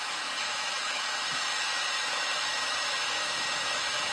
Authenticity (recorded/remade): remade